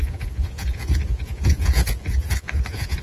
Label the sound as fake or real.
fake